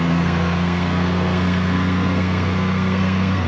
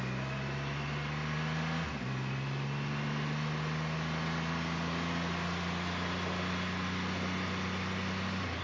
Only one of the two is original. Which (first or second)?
second